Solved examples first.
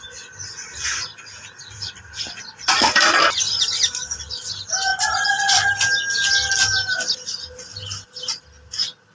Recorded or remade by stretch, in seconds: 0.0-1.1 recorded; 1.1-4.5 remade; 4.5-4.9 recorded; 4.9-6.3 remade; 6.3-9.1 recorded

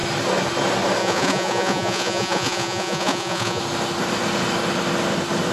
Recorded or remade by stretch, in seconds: 0.0-1.0 recorded; 1.0-3.6 remade; 3.6-5.5 recorded

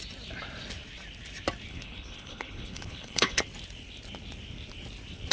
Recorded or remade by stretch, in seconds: 0.0-1.7 recorded; 1.7-3.4 remade; 3.4-5.3 recorded

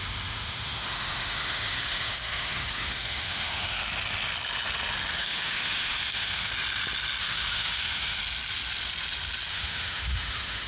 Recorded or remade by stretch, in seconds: 0.0-3.8 remade; 3.8-5.2 recorded; 5.2-6.5 remade; 6.5-7.2 recorded; 7.2-8.2 remade; 8.2-9.5 recorded; 9.5-10.7 remade

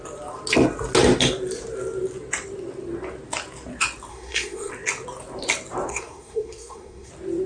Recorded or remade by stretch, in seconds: 0.0-4.1 recorded; 4.1-4.7 remade; 4.7-5.9 recorded; 5.9-7.1 remade; 7.1-7.5 recorded